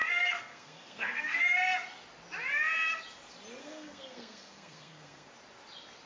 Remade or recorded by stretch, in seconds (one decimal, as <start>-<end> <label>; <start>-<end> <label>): 0.0-1.4 remade; 1.4-3.6 recorded; 3.6-5.3 remade; 5.3-6.1 recorded